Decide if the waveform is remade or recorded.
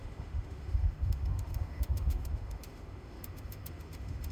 remade